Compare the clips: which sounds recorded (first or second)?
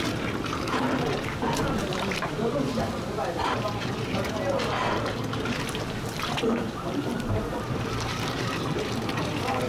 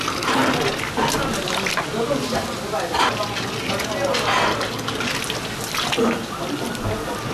second